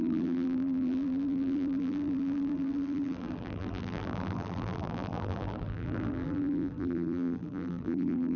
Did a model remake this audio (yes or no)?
yes